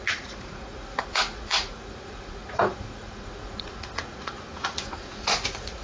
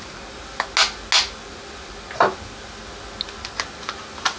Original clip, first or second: second